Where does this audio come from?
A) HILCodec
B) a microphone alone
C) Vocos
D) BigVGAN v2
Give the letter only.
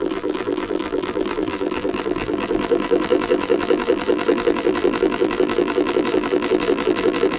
D